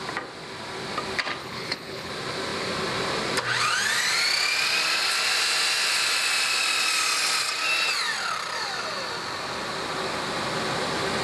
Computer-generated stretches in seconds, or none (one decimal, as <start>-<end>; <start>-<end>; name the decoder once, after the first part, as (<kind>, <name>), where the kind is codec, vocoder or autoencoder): 1.4-2.1 (codec, HILCodec)